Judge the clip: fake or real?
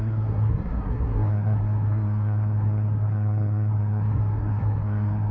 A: fake